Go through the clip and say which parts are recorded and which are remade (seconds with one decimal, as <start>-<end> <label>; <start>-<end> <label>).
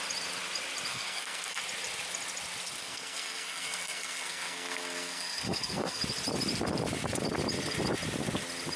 0.0-0.9 recorded; 0.9-1.6 remade; 1.6-2.8 recorded; 2.8-6.0 remade; 6.0-8.8 recorded